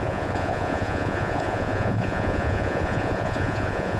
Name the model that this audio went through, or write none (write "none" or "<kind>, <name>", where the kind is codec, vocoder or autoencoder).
vocoder, Vocos